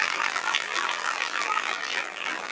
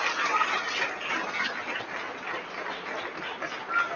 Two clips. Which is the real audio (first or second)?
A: second